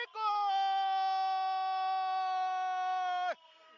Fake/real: real